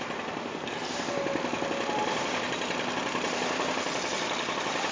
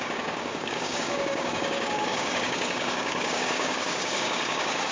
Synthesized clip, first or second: second